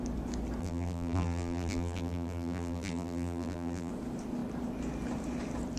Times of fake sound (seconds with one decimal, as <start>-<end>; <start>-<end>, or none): 0.6-3.9